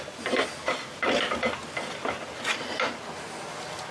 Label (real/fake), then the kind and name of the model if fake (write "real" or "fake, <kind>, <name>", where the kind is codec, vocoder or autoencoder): real